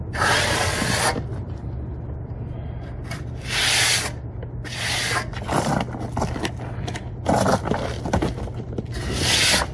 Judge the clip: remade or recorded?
recorded